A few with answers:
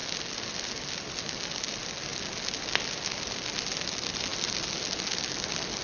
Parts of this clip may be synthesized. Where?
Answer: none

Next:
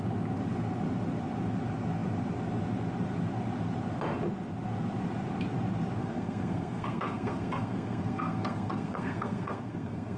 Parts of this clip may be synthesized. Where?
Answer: 6.0-10.2

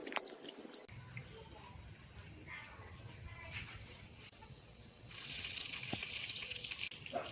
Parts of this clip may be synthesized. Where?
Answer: 2.6-6.7